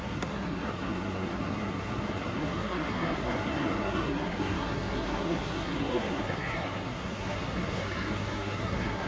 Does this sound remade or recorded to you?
remade